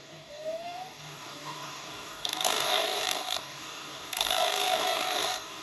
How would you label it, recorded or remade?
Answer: remade